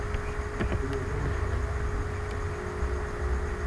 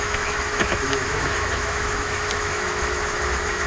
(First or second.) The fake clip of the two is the second